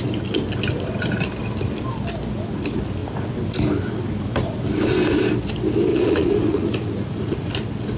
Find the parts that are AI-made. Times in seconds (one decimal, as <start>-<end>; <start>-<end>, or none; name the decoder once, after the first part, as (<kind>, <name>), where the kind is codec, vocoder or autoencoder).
5.9-7.5 (vocoder, Vocos)